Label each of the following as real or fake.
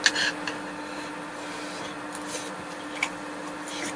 real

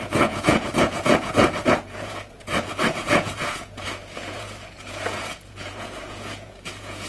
fake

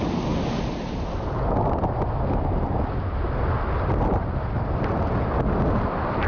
real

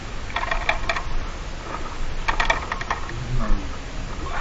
real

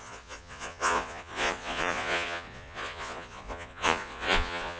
fake